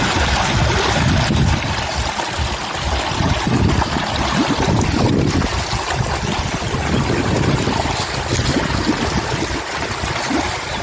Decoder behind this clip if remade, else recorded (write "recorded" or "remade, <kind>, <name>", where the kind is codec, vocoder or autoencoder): recorded